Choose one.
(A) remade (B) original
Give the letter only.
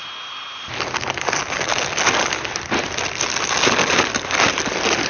B